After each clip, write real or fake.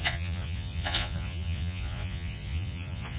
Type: fake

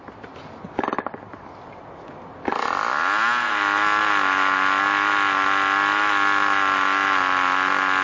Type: real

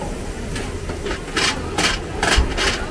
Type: real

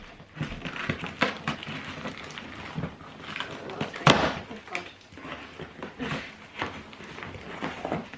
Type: real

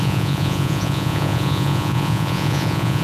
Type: fake